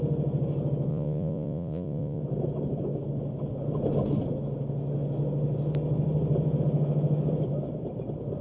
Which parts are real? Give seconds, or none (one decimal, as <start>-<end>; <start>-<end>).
0.0-0.9; 2.2-8.4